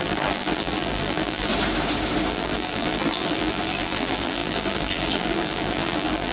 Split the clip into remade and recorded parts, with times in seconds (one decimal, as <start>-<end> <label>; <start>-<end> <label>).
0.0-1.5 remade; 1.5-2.3 recorded; 2.3-6.3 remade